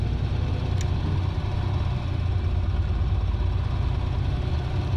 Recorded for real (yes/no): yes